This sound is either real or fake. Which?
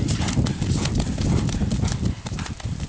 real